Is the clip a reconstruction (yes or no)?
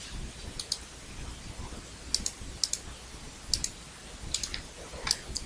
no